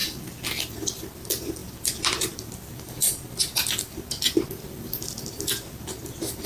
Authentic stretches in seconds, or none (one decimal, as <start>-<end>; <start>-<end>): 0.0-6.5